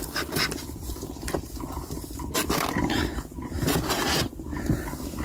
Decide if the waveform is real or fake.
real